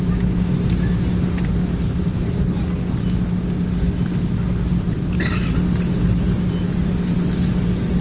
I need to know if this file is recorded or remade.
recorded